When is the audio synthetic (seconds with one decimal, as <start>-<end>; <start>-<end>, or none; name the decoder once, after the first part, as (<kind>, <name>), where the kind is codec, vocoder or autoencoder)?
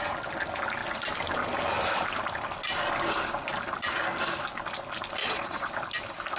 5.2-5.7 (vocoder, Vocos)